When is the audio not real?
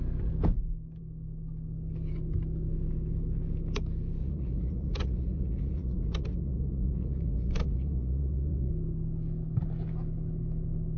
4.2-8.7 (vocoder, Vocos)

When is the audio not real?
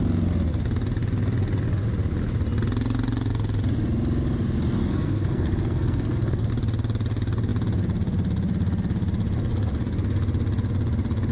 4.8-6.5 (codec, SNAC)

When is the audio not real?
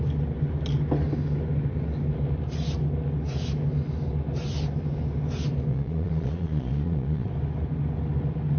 5.7-7.3 (vocoder, Vocos)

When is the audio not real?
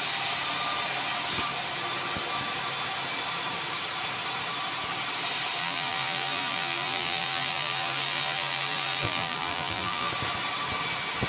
5.6-10.1 (vocoder, BigVGAN v2)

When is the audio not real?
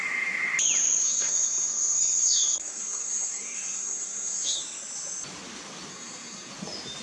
1.0-4.6 (codec, SNAC); 5.9-6.5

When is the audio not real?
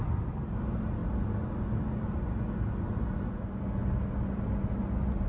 none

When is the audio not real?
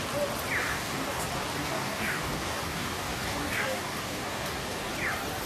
0.6-1.2 (codec, DAC); 1.6-4.9